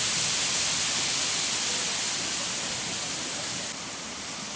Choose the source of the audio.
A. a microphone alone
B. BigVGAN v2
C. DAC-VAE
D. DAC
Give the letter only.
A